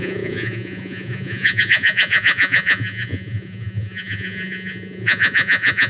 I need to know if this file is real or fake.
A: fake